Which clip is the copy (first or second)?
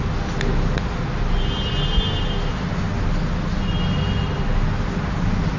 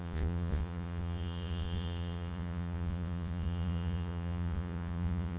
second